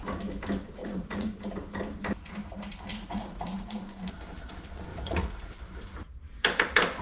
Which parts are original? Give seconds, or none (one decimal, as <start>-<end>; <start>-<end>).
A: 0.0-0.8; 1.4-2.9; 4.1-4.9; 5.6-7.0